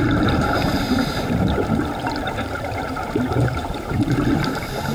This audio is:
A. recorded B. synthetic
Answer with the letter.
B